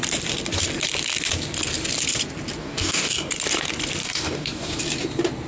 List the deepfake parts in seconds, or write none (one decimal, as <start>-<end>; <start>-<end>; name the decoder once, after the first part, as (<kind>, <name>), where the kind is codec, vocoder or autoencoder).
2.6-3.3 (codec, DAC); 4.0-4.8